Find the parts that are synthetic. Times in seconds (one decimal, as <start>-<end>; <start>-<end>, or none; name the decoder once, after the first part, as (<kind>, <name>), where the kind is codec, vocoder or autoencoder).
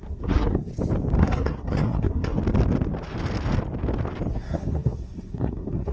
0.0-0.7 (codec, SNAC); 1.2-2.4; 4.3-5.9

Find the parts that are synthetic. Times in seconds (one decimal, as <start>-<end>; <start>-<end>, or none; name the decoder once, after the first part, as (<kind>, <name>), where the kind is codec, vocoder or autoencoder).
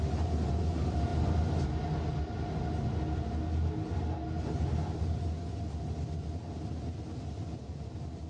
none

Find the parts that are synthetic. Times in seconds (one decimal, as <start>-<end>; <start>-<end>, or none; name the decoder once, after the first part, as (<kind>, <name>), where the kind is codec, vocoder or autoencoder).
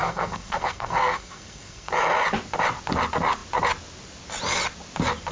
0.0-1.9 (codec, SNAC)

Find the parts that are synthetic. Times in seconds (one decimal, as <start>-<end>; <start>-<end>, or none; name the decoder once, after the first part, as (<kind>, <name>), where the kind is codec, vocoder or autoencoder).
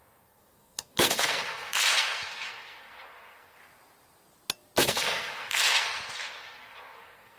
0.0-3.6 (codec, SNAC); 4.8-7.4